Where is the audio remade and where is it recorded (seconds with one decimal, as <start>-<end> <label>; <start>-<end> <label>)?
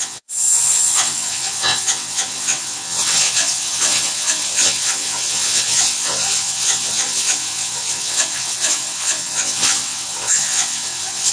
0.0-11.3 remade